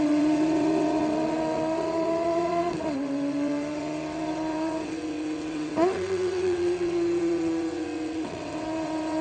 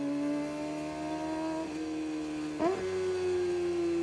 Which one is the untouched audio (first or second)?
second